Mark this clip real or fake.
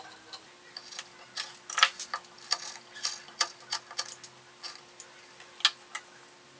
real